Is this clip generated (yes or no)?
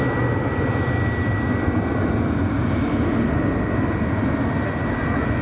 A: no